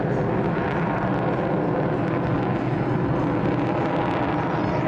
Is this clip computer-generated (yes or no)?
no